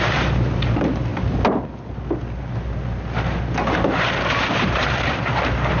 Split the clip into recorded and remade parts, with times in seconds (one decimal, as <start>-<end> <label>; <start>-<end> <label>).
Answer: 0.0-1.1 remade; 1.1-4.4 recorded; 4.4-5.8 remade